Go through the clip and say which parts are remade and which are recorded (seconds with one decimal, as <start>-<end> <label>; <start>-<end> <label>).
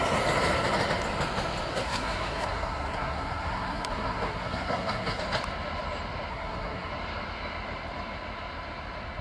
0.0-1.7 recorded; 1.7-5.2 remade; 5.2-6.3 recorded; 6.3-6.9 remade; 6.9-9.2 recorded